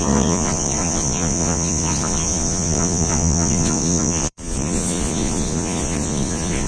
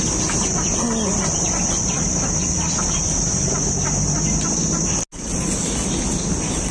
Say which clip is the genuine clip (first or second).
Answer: second